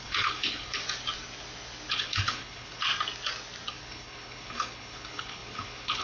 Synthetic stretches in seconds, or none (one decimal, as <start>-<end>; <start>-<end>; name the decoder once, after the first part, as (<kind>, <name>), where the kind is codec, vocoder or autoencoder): 0.0-0.8 (codec, HILCodec); 1.9-2.9; 3.7-6.0